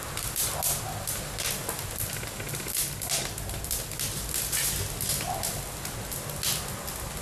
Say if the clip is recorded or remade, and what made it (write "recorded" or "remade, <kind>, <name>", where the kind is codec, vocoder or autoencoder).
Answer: recorded